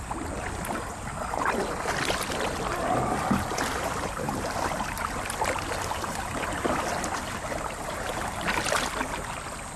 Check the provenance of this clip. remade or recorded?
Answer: recorded